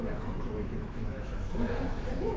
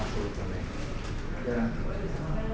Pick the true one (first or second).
second